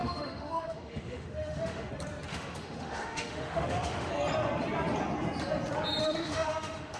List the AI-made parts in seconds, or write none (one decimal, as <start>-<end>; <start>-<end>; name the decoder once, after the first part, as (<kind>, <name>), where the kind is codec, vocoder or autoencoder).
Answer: 0.0-1.9 (autoencoder, DAC-VAE); 2.3-4.1; 6.0-7.0